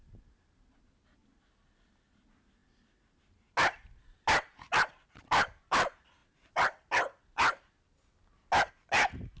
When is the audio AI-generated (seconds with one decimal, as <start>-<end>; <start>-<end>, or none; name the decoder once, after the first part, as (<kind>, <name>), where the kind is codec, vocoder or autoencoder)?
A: none